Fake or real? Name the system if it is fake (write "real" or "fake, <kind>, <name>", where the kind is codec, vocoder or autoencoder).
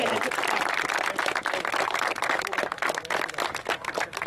real